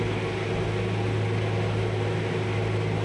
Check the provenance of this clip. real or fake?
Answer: real